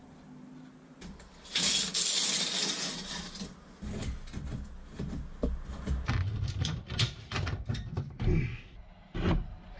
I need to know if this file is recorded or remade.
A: recorded